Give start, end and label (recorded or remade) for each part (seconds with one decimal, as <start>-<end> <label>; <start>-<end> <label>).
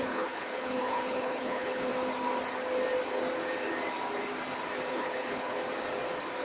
0.0-1.9 remade; 1.9-4.9 recorded; 4.9-5.6 remade; 5.6-6.4 recorded